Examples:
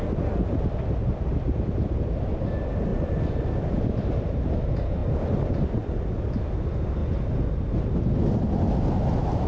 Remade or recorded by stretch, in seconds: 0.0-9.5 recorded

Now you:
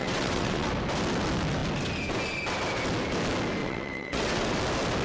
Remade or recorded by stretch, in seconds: 0.0-0.7 remade; 0.7-3.6 recorded; 3.6-4.6 remade; 4.6-5.0 recorded

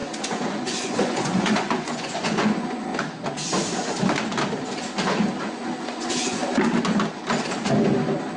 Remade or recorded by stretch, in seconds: 0.0-2.9 remade; 2.9-5.4 recorded; 5.4-6.4 remade; 6.4-8.4 recorded

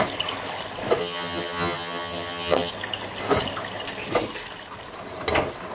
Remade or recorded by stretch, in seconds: 0.0-1.0 recorded; 1.0-2.7 remade; 2.7-5.7 recorded